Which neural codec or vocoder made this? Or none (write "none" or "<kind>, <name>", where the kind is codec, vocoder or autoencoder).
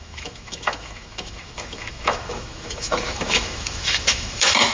autoencoder, DAC-VAE